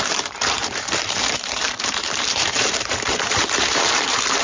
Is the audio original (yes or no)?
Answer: no